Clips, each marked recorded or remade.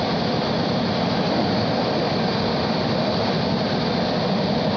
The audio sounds recorded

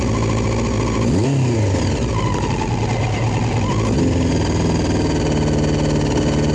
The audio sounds recorded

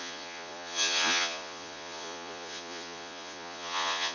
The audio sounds remade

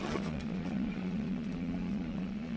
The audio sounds remade